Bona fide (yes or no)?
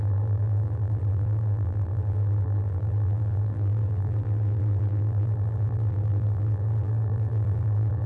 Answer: no